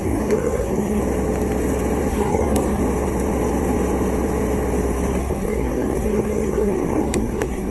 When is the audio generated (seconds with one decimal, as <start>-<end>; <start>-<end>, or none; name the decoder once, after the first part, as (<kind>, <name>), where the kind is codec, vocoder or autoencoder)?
0.0-1.0 (codec, SNAC); 2.1-2.8; 5.2-7.7